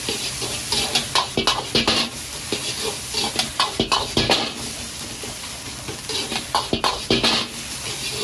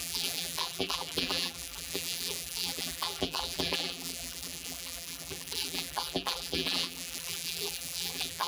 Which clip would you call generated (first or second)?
second